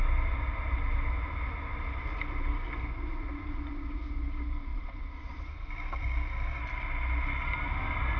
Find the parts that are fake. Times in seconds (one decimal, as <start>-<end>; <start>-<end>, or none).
4.7-5.7